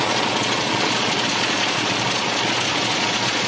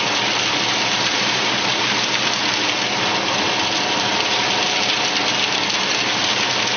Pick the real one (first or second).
second